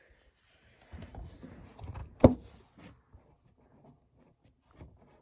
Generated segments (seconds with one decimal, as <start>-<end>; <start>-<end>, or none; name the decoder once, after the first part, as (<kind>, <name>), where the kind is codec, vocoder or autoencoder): none